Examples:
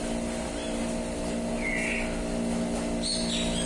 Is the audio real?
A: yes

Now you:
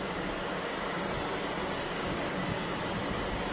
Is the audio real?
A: no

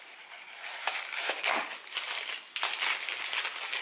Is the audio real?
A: yes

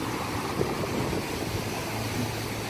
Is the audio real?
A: yes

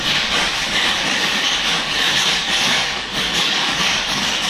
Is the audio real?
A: no